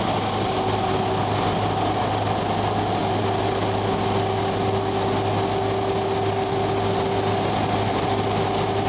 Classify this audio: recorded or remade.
recorded